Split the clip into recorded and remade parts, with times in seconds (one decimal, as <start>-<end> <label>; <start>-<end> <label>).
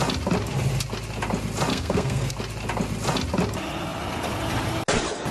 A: 0.0-1.7 recorded; 1.7-2.3 remade; 2.3-5.3 recorded